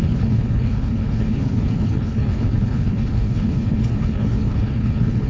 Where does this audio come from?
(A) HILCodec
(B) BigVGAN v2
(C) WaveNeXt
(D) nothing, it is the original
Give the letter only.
A